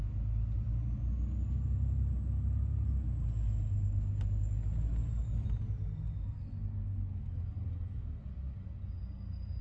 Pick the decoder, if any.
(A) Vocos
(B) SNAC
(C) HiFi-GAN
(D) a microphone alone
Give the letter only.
D